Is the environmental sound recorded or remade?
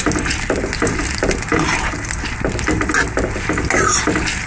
recorded